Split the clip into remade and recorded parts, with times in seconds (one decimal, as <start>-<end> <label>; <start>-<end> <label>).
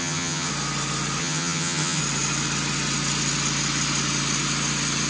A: 0.0-0.5 remade; 0.5-1.2 recorded; 1.2-2.0 remade; 2.0-5.1 recorded